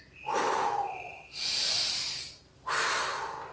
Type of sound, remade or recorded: remade